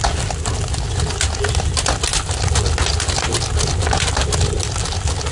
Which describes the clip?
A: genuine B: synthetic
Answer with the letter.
A